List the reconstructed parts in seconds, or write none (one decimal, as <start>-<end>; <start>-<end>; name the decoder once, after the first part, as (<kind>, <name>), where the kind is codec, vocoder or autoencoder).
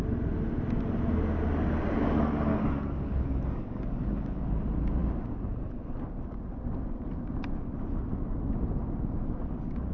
2.5-4.4 (codec, DAC)